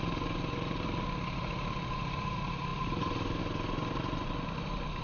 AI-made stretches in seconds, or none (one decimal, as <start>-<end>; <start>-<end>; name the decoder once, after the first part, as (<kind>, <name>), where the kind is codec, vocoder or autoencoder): none